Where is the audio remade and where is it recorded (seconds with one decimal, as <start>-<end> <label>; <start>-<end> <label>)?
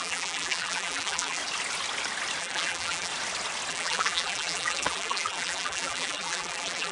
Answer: 0.0-1.4 remade; 1.4-2.4 recorded; 2.4-3.1 remade; 3.1-3.7 recorded; 3.7-6.9 remade